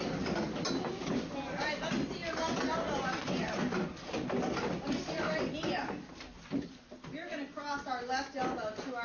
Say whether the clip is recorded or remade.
recorded